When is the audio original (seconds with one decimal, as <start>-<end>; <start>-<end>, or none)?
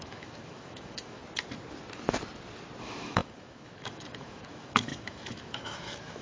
1.2-2.8